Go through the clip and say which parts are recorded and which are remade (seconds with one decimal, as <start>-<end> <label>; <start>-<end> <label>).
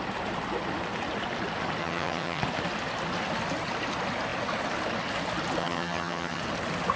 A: 0.0-1.8 recorded; 1.8-2.4 remade; 2.4-5.6 recorded; 5.6-6.4 remade; 6.4-7.0 recorded